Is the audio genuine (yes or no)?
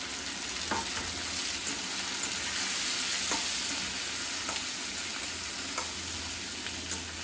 yes